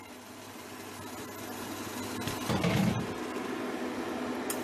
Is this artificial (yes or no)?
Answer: no